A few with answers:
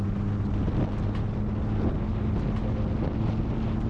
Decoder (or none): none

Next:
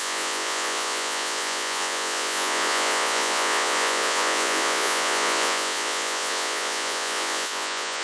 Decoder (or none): vocoder, Vocos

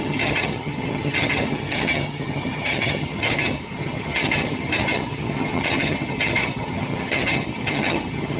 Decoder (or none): vocoder, HiFi-GAN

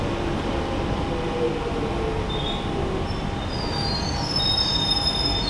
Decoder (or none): none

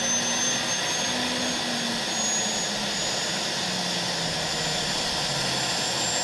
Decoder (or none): none